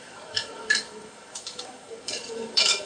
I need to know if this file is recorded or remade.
remade